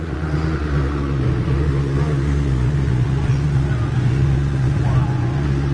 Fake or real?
fake